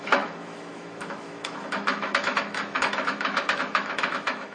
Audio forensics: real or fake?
fake